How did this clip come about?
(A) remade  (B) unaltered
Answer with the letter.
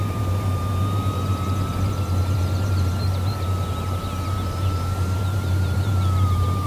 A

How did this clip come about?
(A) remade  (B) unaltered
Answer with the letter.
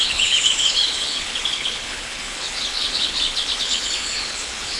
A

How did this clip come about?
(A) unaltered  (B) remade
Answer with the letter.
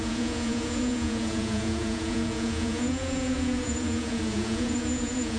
B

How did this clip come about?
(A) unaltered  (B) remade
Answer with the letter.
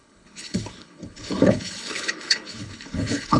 B